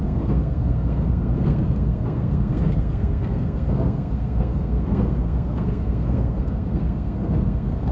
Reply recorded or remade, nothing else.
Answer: remade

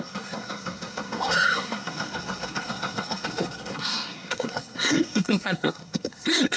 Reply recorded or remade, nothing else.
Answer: remade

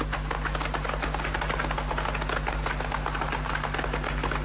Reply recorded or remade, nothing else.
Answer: recorded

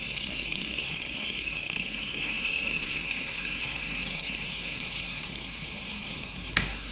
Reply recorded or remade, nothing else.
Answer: remade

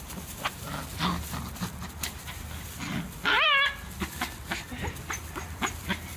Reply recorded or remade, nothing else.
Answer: recorded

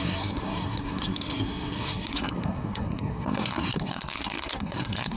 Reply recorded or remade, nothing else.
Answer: remade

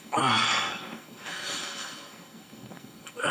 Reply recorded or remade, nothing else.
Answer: remade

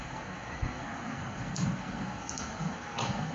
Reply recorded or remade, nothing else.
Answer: remade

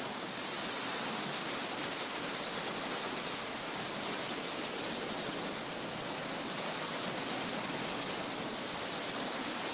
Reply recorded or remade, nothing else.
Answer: recorded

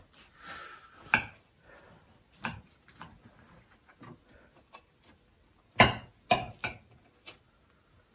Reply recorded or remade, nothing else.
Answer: recorded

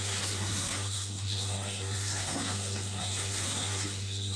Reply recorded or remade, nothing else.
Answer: remade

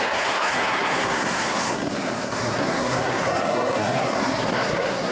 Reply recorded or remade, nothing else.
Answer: remade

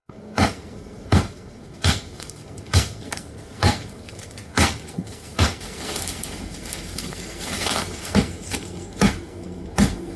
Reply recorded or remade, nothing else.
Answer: remade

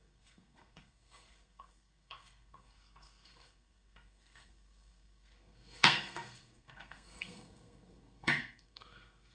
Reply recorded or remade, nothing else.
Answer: remade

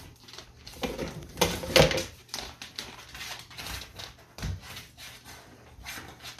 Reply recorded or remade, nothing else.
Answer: recorded